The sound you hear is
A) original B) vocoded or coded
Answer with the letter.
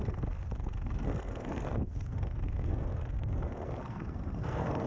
B